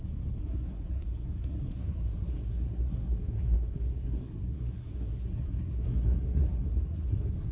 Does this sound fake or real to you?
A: fake